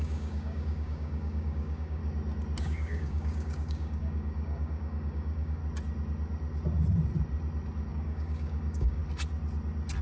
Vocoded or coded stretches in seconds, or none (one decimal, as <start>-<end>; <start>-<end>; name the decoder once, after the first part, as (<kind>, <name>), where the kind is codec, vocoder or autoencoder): 0.0-2.0 (codec, DAC); 2.6-5.6; 7.9-9.0

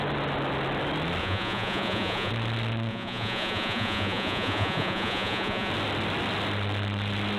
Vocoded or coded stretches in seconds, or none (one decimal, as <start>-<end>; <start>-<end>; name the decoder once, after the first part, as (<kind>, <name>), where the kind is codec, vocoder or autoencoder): 1.2-2.3 (vocoder, Vocos); 2.9-5.7

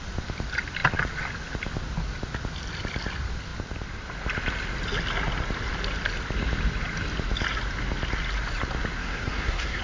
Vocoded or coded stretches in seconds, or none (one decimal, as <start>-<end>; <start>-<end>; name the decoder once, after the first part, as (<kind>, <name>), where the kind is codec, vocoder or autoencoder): 9.0-9.8 (codec, SNAC)

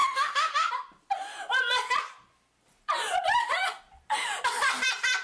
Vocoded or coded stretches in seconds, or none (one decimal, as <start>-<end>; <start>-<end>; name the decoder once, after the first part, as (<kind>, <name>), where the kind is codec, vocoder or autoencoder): 0.0-0.7 (autoencoder, DAC-VAE)

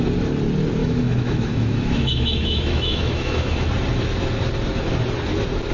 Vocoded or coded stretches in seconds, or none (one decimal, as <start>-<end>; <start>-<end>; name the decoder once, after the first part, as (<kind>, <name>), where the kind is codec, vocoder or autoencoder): 0.8-3.7 (autoencoder, DAC-VAE)

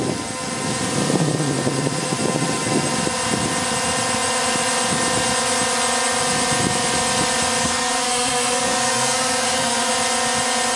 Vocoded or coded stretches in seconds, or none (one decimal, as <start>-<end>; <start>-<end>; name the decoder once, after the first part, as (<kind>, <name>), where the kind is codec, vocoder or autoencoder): 7.6-9.9 (codec, SNAC)

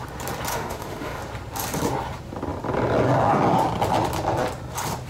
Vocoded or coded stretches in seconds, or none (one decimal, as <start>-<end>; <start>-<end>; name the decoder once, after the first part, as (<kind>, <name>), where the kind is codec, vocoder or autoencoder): 0.5-1.2 (autoencoder, DAC-VAE)